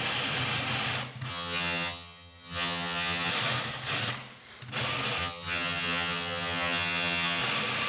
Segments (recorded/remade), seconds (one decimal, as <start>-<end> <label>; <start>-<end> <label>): 0.0-1.3 recorded; 1.3-3.3 remade; 3.3-5.2 recorded; 5.2-7.4 remade; 7.4-7.9 recorded